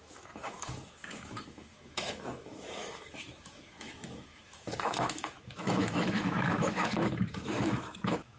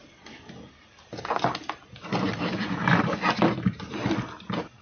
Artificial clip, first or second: first